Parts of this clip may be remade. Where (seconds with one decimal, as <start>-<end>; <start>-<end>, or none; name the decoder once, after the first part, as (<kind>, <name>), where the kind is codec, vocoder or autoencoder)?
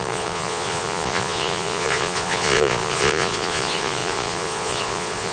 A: 0.0-5.3 (vocoder, Vocos)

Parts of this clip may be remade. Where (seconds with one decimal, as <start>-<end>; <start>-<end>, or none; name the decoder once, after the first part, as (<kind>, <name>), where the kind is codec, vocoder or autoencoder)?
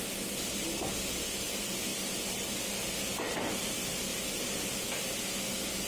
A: none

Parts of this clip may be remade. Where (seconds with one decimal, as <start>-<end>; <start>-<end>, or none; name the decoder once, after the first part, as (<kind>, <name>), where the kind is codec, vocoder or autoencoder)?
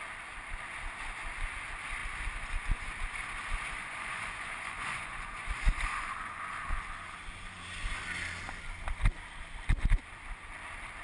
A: 3.8-6.4 (vocoder, Vocos)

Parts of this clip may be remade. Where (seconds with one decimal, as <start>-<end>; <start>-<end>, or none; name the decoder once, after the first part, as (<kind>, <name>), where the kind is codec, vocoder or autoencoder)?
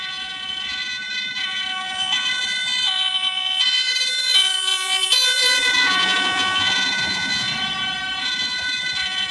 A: 0.0-7.5 (vocoder, Vocos); 8.2-9.3